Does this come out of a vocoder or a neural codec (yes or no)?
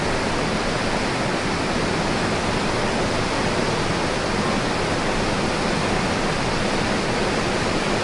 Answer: no